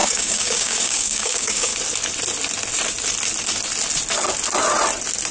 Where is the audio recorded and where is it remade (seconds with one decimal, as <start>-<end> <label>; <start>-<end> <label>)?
0.0-1.7 remade; 1.7-5.3 recorded